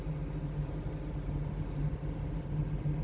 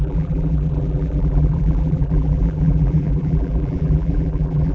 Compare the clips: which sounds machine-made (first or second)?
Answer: second